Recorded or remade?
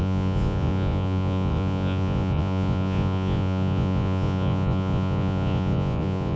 remade